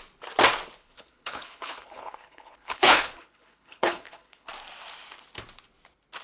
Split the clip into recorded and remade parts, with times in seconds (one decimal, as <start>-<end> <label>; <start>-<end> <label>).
0.0-0.8 recorded; 0.8-4.5 remade; 4.5-6.2 recorded

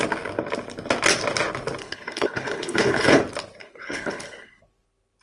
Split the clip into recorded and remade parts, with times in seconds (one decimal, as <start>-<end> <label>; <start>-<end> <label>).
0.0-1.8 recorded; 1.8-3.2 remade; 3.2-3.6 recorded; 3.6-4.6 remade; 4.6-5.2 recorded

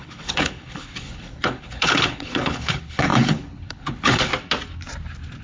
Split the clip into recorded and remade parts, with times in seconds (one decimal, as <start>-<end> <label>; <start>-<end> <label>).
0.0-4.3 remade; 4.3-5.4 recorded

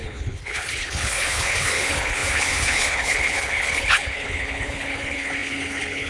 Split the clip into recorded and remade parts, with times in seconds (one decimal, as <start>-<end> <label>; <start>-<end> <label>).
0.0-6.1 remade

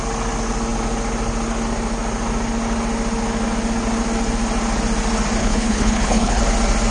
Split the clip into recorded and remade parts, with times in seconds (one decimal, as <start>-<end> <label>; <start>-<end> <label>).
0.0-5.4 recorded; 5.4-6.4 remade; 6.4-6.9 recorded

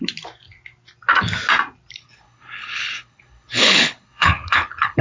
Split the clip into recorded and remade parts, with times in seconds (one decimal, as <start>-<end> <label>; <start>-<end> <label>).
0.0-2.0 recorded; 2.0-5.0 remade

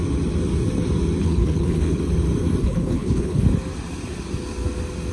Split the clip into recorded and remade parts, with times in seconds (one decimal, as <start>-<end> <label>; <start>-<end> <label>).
0.0-1.2 recorded; 1.2-2.0 remade; 2.0-2.6 recorded; 2.6-3.4 remade; 3.4-5.1 recorded

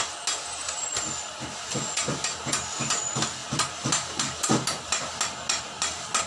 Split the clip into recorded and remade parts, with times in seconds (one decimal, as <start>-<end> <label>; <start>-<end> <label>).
0.0-6.3 recorded